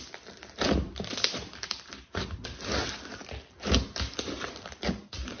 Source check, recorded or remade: recorded